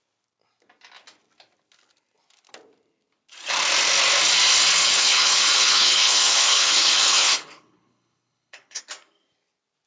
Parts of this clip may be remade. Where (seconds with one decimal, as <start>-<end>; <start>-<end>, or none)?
4.8-8.8